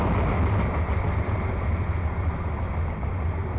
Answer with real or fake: real